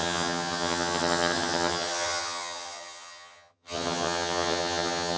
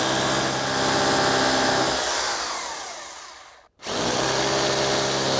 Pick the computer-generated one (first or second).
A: first